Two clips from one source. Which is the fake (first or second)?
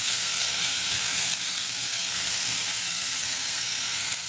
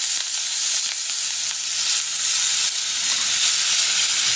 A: first